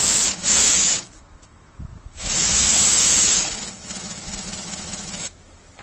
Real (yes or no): no